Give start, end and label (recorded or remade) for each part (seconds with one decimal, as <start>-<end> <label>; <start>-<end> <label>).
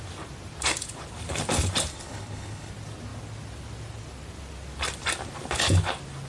0.0-1.9 recorded; 1.9-2.7 remade; 2.7-6.3 recorded